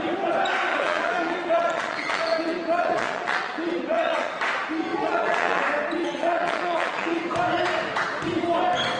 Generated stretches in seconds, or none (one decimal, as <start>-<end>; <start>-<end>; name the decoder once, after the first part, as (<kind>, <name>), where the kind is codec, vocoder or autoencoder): 0.7-4.3 (vocoder, Vocos); 4.9-5.6; 6.0-7.2